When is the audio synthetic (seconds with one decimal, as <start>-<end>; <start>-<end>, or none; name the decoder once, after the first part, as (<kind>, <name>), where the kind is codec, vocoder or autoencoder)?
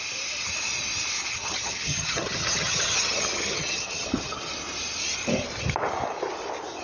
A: 1.3-4.5 (vocoder, HiFi-GAN)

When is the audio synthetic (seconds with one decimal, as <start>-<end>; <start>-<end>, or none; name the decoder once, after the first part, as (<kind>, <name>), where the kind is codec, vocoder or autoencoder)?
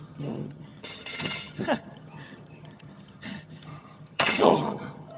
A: 0.0-5.2 (vocoder, HiFi-GAN)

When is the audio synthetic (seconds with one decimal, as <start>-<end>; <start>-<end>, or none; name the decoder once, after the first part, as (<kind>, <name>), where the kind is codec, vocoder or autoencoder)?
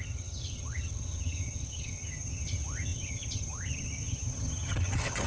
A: 0.0-5.3 (vocoder, HiFi-GAN)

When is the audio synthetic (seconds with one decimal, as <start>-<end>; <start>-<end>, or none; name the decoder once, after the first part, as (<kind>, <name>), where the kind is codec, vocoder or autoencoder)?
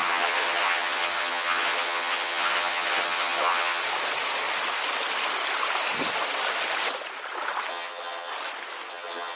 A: 0.0-3.8 (vocoder, HiFi-GAN); 7.7-8.3; 8.9-9.4